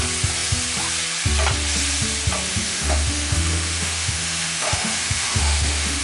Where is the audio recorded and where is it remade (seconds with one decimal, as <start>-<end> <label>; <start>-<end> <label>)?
0.0-2.5 recorded; 2.5-6.0 remade